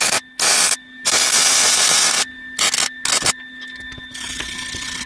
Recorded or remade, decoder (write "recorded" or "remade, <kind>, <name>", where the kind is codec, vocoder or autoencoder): recorded